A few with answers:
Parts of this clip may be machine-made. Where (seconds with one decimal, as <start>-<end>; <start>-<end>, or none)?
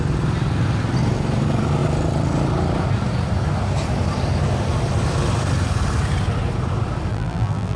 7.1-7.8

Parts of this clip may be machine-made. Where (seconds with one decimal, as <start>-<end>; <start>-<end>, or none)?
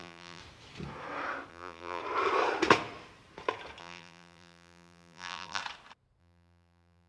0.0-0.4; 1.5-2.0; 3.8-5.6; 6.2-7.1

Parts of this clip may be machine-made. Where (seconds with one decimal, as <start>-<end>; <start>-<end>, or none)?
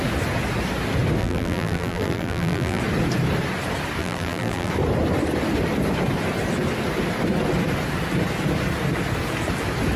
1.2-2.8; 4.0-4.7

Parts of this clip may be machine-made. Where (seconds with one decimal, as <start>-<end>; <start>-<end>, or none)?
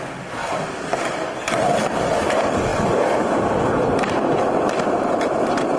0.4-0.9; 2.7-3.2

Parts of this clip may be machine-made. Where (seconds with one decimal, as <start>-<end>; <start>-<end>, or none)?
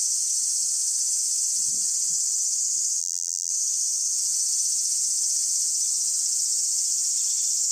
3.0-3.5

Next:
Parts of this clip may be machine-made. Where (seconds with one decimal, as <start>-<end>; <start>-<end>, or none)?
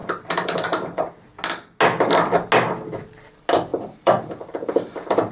0.0-1.0; 3.7-5.3